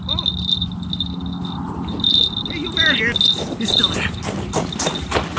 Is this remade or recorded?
recorded